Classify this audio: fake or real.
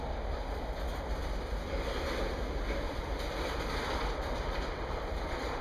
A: real